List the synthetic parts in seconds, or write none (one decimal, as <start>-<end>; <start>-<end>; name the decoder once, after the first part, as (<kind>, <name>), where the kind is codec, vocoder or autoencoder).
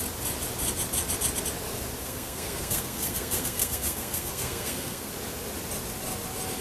2.0-5.1 (codec, SNAC)